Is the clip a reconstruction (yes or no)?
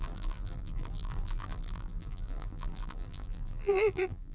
yes